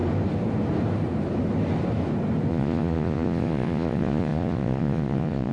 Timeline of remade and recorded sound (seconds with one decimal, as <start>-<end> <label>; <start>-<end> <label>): 0.0-2.5 recorded; 2.5-5.5 remade